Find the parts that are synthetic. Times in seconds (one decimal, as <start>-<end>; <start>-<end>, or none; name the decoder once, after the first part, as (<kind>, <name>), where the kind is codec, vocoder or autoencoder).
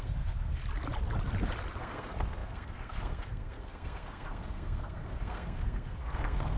0.0-0.6 (codec, SNAC); 1.8-6.6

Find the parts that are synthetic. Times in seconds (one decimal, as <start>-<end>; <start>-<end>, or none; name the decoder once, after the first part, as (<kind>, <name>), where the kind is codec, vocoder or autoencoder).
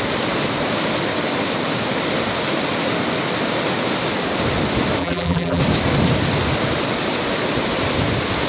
5.0-5.6 (vocoder, BigVGAN v2)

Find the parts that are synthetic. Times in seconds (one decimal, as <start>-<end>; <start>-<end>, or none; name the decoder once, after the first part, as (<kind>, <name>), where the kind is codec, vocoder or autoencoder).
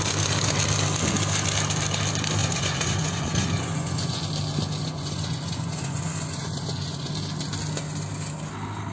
2.4-4.2 (vocoder, Vocos); 4.8-7.1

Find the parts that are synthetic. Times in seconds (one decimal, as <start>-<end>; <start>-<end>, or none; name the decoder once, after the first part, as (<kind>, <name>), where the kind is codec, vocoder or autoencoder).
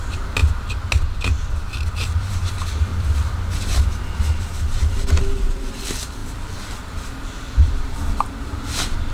0.0-0.4 (vocoder, BigVGAN v2); 1.9-2.9; 4.4-9.1